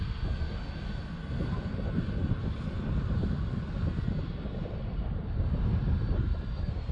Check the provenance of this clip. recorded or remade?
recorded